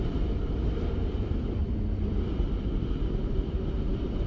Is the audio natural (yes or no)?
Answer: no